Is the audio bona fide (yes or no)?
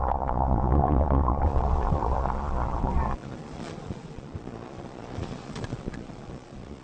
no